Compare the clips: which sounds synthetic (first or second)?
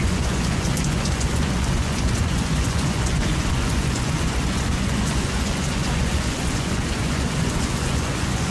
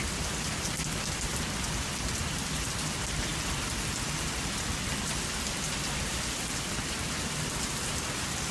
first